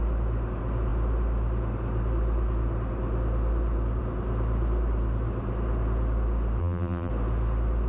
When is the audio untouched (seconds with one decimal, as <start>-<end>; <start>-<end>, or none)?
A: 0.0-6.6; 7.1-7.9